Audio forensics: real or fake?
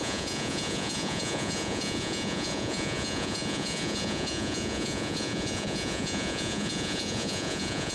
fake